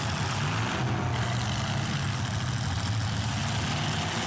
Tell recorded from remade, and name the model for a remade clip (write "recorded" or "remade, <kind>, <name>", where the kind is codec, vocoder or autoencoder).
recorded